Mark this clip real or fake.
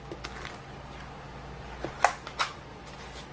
real